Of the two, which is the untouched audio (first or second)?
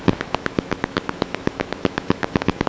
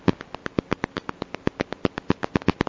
second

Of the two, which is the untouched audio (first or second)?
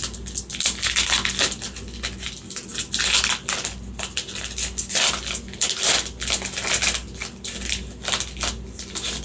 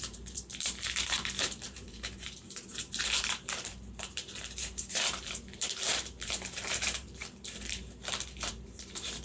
first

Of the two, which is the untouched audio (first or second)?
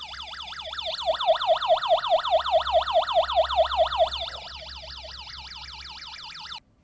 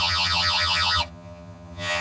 first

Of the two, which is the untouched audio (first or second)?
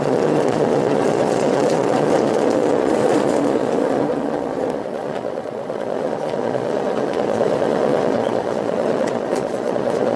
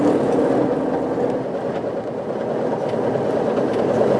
second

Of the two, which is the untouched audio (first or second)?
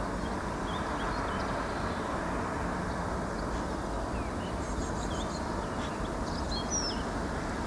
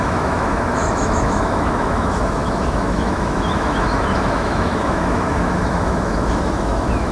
first